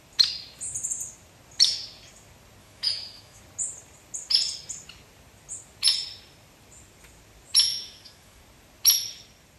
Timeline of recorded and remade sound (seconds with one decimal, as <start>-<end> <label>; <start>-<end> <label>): 0.0-2.6 recorded; 2.6-3.4 remade; 3.4-7.7 recorded; 7.7-8.4 remade; 8.4-9.6 recorded

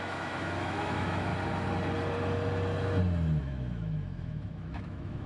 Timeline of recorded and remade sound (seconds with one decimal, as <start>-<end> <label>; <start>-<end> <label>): 0.0-1.3 remade; 1.3-3.4 recorded; 3.4-5.3 remade